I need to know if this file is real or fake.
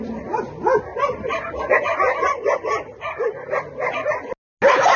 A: real